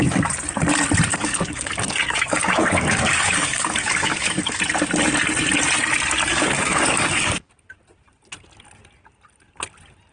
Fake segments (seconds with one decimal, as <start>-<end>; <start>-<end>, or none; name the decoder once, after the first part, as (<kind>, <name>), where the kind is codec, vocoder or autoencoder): 1.1-4.6 (codec, DAC); 6.3-7.5